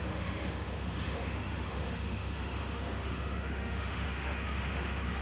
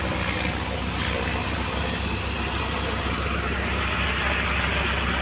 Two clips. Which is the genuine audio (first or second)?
second